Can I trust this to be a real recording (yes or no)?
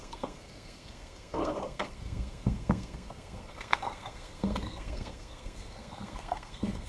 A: no